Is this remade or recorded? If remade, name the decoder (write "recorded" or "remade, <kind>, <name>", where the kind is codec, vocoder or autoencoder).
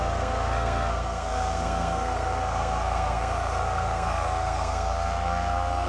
remade, codec, SNAC